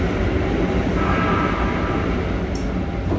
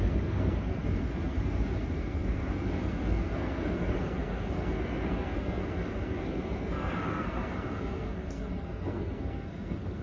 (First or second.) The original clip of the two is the first